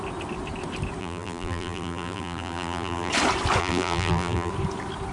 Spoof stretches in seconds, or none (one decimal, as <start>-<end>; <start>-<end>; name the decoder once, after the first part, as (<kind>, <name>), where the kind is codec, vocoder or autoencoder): 1.0-3.1 (vocoder, BigVGAN v2); 3.6-4.5

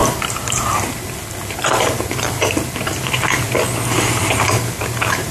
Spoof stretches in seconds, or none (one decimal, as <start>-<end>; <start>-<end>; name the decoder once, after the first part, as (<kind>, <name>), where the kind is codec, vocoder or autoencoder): 0.0-2.5 (vocoder, BigVGAN v2)

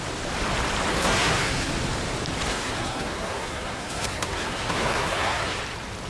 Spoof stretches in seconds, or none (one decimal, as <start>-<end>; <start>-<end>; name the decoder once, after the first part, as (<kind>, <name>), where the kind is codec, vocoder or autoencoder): 0.9-1.7 (codec, SNAC); 2.5-5.6

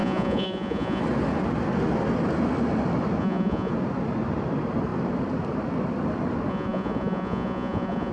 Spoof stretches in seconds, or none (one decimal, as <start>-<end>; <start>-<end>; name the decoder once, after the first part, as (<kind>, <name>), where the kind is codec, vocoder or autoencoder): 0.0-1.0 (vocoder, Vocos); 3.2-3.7; 6.5-8.1

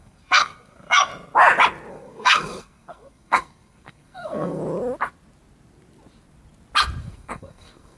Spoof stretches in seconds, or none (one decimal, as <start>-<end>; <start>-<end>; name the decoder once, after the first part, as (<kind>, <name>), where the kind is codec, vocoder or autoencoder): 0.0-1.1 (codec, SNAC); 1.9-4.6; 7.0-8.0

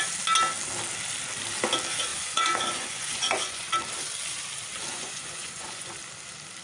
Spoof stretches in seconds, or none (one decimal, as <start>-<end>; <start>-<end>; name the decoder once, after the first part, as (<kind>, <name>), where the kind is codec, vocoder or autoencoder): 2.1-3.7 (vocoder, Vocos); 4.9-5.9

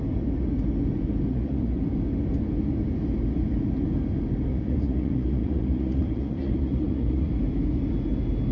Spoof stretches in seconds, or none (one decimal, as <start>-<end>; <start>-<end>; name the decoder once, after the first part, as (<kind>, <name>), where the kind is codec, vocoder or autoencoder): 1.3-1.8 (vocoder, Vocos); 4.5-7.3

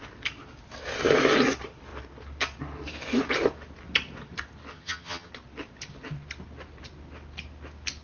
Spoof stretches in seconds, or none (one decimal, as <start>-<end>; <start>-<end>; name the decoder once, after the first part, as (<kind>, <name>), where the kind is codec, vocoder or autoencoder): 4.7-5.3 (vocoder, HiFi-GAN)